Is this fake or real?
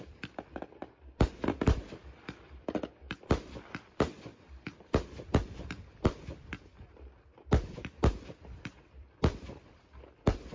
fake